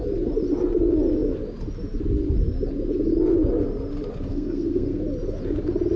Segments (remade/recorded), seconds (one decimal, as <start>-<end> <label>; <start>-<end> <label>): 0.0-4.3 recorded; 4.3-5.0 remade; 5.0-6.0 recorded